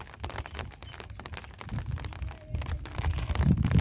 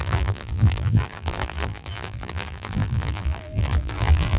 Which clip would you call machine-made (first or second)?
second